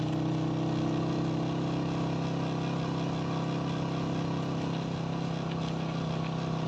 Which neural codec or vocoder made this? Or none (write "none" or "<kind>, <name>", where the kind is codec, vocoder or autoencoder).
none